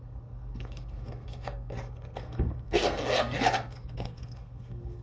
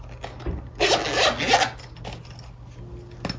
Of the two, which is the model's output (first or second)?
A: first